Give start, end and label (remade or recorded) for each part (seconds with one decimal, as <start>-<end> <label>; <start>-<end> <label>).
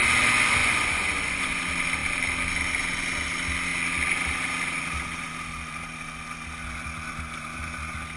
0.0-0.6 recorded; 0.6-1.6 remade; 1.6-8.2 recorded